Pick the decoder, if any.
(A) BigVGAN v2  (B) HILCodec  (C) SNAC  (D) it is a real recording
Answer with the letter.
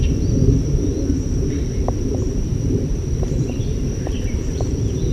A